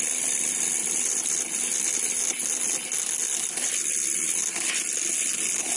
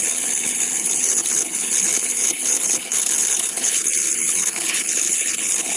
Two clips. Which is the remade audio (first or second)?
second